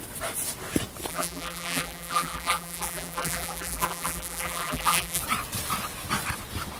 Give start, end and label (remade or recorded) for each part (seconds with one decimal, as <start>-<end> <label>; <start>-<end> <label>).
0.0-1.1 recorded; 1.1-5.2 remade; 5.2-6.8 recorded

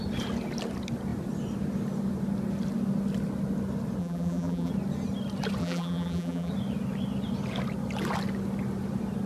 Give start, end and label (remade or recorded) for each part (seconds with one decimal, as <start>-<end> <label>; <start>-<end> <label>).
0.0-4.0 recorded; 4.0-4.7 remade; 4.7-5.6 recorded; 5.6-6.5 remade; 6.5-9.3 recorded

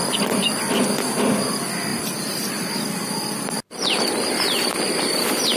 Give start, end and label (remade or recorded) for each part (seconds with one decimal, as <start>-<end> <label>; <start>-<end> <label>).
0.0-0.8 remade; 0.8-1.9 recorded; 1.9-5.0 remade; 5.0-5.6 recorded

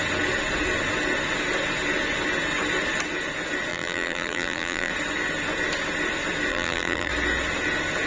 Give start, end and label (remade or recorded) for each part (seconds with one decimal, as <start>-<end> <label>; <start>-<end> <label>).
0.0-3.7 recorded; 3.7-4.9 remade; 4.9-6.5 recorded; 6.5-7.1 remade; 7.1-8.1 recorded

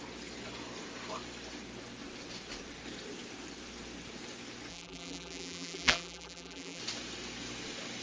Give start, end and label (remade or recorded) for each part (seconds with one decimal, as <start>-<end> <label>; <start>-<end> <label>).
0.0-4.7 recorded; 4.7-6.8 remade; 6.8-8.0 recorded

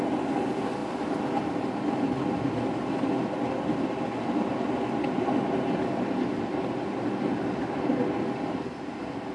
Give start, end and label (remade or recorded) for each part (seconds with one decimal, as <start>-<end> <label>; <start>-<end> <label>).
0.0-9.3 recorded